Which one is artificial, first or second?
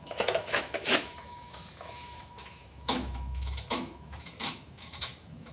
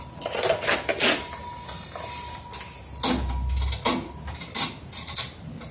first